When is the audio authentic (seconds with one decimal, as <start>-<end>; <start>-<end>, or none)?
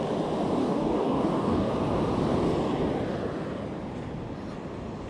0.0-0.6; 1.7-5.1